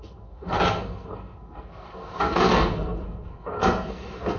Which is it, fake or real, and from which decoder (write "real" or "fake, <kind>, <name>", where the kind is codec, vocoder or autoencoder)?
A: fake, codec, SNAC